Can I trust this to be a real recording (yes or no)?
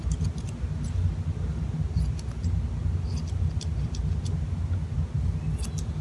yes